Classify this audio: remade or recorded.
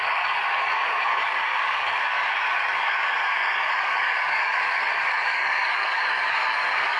remade